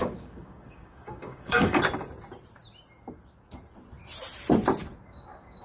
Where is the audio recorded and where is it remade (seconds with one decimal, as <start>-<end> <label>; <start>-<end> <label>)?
0.0-1.8 remade; 1.8-5.6 recorded